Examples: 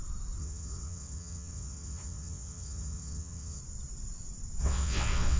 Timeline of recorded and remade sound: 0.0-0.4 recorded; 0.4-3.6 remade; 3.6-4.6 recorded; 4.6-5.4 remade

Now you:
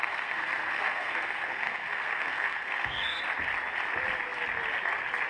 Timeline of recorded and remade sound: 0.0-3.2 remade; 3.2-5.3 recorded

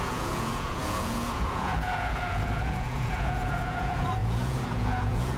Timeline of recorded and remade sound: 0.0-5.4 remade

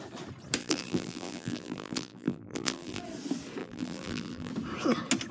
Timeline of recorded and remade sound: 0.0-0.6 recorded; 0.6-3.0 remade; 3.0-3.6 recorded; 3.6-4.5 remade; 4.5-5.3 recorded

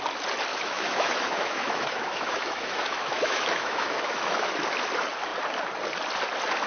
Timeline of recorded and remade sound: 0.0-0.5 recorded; 0.5-4.5 remade; 4.5-6.7 recorded

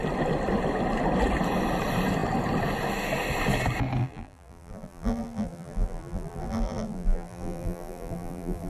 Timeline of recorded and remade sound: 0.0-4.0 recorded; 4.0-8.7 remade